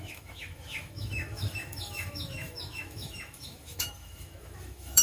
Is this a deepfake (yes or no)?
yes